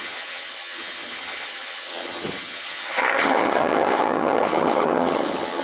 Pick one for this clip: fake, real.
fake